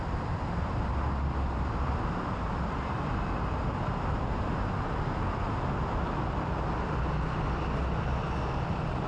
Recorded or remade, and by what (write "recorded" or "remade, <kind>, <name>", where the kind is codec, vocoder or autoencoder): recorded